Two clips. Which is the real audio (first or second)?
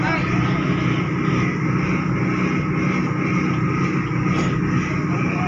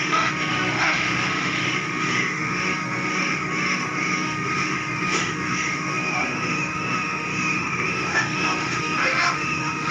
first